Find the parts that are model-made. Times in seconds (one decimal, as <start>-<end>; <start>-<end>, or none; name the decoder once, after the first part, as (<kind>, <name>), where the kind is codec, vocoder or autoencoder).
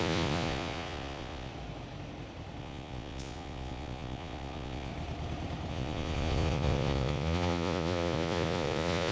0.0-1.5 (vocoder, Vocos); 2.6-4.9; 5.7-9.1